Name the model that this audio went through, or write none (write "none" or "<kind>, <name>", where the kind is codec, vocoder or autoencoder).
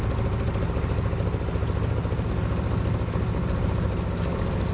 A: none